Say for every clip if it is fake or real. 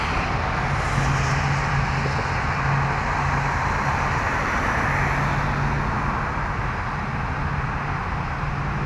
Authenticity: real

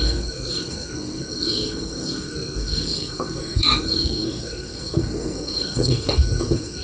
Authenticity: fake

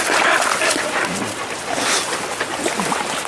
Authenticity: real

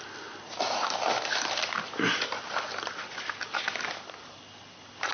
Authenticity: real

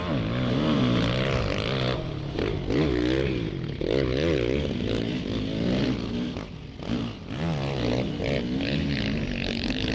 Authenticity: real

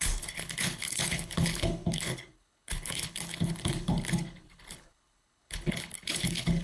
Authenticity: fake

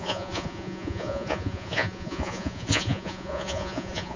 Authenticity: fake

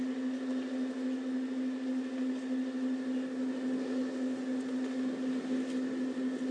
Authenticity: real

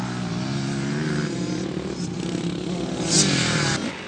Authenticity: real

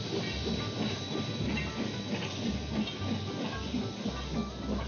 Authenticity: real